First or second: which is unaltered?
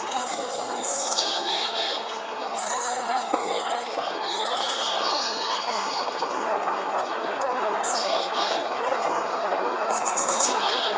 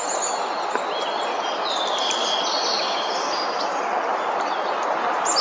second